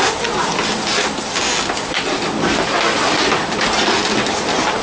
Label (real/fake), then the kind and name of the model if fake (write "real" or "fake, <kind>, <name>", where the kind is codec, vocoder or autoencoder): real